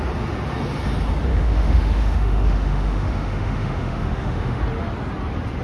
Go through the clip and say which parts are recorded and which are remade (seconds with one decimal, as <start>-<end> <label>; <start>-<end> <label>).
0.0-1.3 recorded; 1.3-4.6 remade; 4.6-5.6 recorded